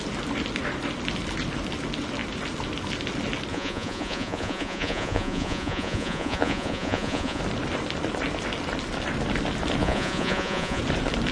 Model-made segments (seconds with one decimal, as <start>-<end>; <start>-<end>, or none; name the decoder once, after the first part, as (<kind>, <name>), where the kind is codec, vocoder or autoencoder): 3.5-7.4 (vocoder, Vocos); 9.8-10.8